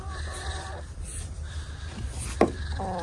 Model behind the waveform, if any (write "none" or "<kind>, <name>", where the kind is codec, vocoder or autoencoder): none